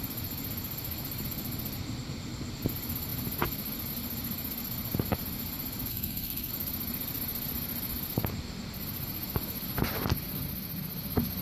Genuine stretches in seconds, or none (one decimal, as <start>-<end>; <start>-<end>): 0.0-5.9; 6.5-11.4